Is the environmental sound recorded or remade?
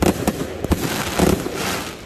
recorded